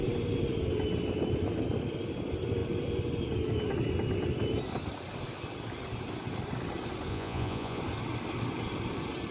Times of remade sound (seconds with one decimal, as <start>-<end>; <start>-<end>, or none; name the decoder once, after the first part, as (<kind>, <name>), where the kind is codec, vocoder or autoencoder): 7.1-7.8 (vocoder, Vocos)